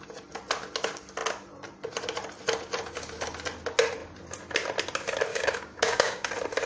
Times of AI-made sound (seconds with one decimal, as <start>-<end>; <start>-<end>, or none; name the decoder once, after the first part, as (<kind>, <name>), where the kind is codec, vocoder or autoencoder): 5.3-6.3 (codec, DAC)